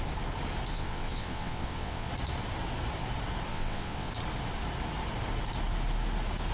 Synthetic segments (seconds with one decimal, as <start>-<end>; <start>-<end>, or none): 0.7-2.1; 3.5-4.1